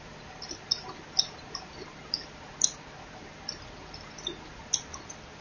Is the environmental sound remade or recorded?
recorded